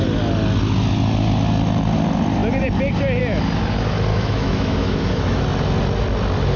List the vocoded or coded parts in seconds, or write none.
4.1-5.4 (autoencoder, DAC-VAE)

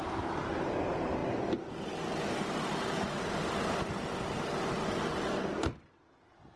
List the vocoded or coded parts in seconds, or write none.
none